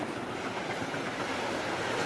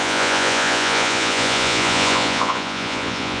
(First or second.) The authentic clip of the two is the first